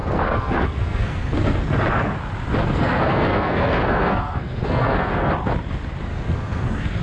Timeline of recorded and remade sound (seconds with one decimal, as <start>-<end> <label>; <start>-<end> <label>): 0.0-2.2 remade; 2.2-2.6 recorded; 2.6-5.3 remade; 5.3-6.1 recorded; 6.1-7.0 remade